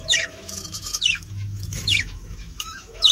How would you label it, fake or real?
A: fake